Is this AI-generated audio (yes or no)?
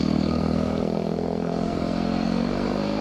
yes